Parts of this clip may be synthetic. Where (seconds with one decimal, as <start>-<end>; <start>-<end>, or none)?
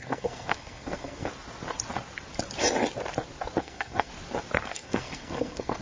0.0-1.3; 3.6-4.1; 4.6-5.8